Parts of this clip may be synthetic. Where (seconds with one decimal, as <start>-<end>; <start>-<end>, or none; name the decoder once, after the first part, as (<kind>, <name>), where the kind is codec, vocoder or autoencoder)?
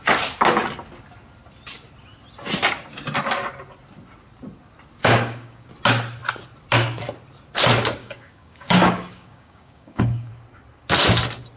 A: 5.0-5.7 (codec, DAC); 8.0-10.3